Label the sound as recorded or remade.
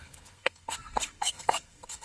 remade